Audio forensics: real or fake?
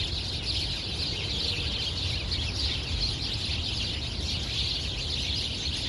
real